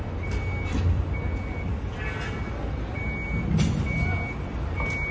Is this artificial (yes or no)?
no